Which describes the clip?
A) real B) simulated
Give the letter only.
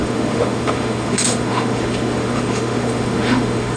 B